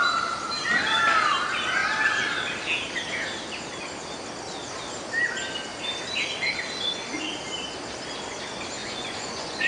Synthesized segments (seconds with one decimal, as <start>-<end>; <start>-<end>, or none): 8.8-9.7